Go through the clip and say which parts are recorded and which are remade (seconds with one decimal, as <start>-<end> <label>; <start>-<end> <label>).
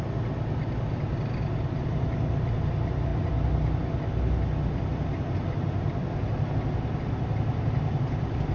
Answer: 0.0-3.1 remade; 3.1-6.5 recorded; 6.5-8.5 remade